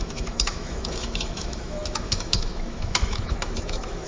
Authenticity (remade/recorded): remade